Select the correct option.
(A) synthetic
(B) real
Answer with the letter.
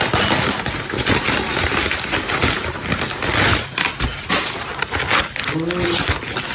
B